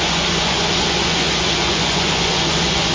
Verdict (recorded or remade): remade